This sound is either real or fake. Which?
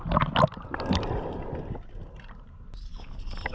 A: real